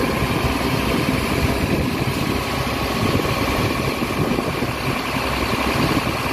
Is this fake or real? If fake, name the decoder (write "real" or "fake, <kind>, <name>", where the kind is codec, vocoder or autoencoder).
real